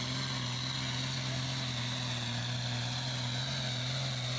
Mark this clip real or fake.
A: real